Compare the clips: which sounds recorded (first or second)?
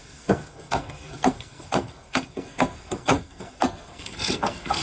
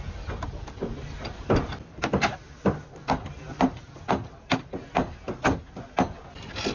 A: second